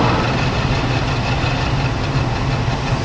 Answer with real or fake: real